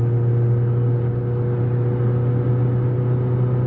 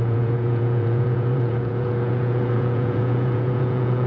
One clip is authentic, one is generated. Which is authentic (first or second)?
first